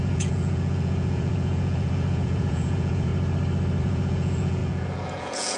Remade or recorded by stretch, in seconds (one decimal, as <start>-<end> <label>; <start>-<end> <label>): 0.0-3.1 remade; 3.1-3.8 recorded; 3.8-5.6 remade